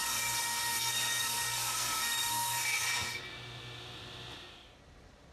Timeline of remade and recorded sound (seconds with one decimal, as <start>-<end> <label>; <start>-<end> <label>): 0.0-3.2 remade; 3.2-5.3 recorded